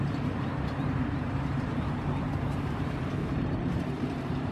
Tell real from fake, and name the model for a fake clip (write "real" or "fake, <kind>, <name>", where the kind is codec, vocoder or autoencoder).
fake, vocoder, BigVGAN v2